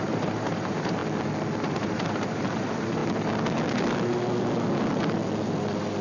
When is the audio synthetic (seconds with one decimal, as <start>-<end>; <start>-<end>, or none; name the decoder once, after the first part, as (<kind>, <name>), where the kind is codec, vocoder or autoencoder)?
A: 0.0-1.0 (vocoder, BigVGAN v2); 1.7-3.0